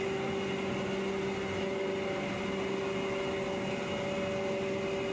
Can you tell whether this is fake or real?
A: real